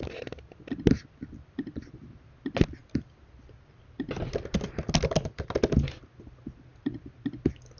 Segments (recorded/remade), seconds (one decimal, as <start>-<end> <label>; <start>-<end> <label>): 0.0-7.8 recorded